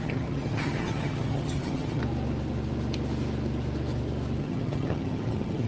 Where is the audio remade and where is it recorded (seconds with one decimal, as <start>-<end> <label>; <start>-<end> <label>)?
0.0-2.0 remade; 2.0-4.4 recorded; 4.4-5.7 remade